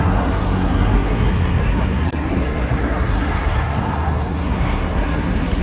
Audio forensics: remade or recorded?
remade